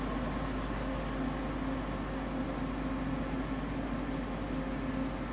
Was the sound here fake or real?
real